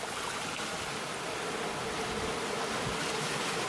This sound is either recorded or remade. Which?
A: recorded